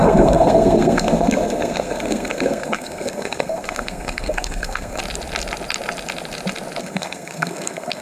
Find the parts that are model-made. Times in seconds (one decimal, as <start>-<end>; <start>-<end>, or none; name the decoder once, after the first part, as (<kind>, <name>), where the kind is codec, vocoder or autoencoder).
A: 0.0-5.0 (codec, SNAC); 6.8-8.0